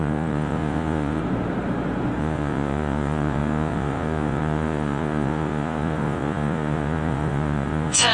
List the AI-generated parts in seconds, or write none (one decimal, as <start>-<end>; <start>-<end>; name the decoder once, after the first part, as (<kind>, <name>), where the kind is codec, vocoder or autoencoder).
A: 0.0-1.2 (vocoder, Vocos); 2.2-8.1